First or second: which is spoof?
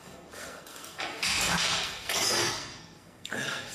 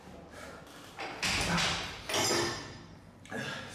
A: first